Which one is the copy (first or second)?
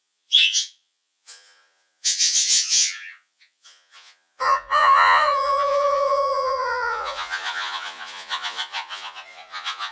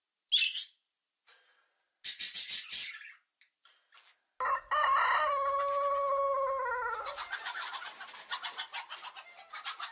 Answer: first